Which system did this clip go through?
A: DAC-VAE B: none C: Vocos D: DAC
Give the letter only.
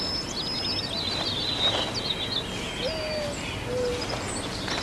B